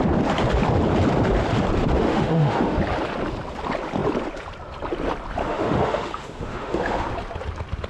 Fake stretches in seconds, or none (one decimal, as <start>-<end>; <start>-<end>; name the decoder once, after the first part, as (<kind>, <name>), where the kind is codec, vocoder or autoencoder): 2.0-2.8 (autoencoder, DAC-VAE); 5.4-7.1